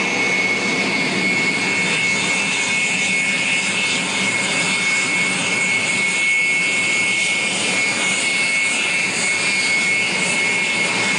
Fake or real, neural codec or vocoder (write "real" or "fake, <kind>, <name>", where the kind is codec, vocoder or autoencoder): real